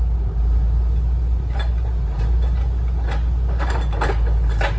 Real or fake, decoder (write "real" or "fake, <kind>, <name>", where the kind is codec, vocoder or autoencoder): real